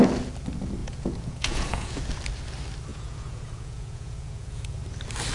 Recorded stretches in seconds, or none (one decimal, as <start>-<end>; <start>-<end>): 0.0-0.8; 2.0-2.9; 4.8-5.3